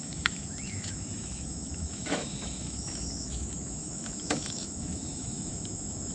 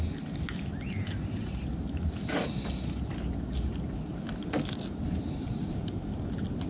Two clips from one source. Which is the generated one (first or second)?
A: first